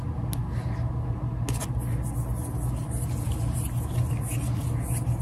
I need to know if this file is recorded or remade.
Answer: recorded